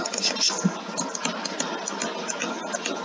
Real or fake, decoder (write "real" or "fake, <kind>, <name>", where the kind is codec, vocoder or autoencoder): real